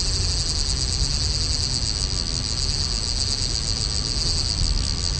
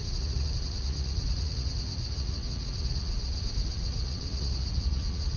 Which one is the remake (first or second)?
second